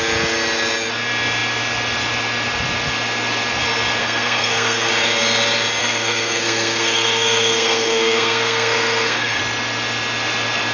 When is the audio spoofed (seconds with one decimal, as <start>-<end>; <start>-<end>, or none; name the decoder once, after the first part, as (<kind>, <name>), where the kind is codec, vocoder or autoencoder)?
4.0-4.9 (codec, SNAC); 5.8-9.4